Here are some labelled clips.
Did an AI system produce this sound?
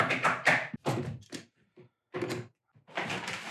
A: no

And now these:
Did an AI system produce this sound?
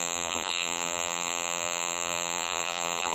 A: yes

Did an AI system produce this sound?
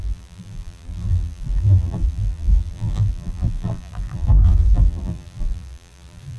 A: yes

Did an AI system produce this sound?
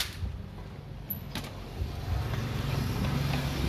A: no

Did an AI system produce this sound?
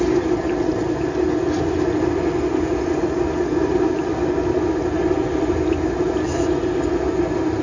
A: no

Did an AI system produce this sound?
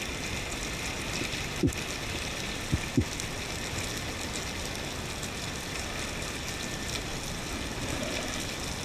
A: no